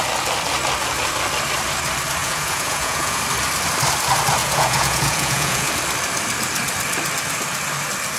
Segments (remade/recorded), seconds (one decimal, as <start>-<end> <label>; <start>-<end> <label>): 0.0-2.2 recorded; 2.2-3.2 remade; 3.2-4.4 recorded; 4.4-5.7 remade; 5.7-8.2 recorded